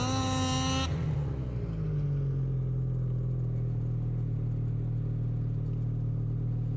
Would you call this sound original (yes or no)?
yes